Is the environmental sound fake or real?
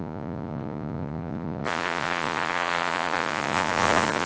fake